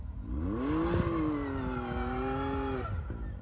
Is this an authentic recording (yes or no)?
yes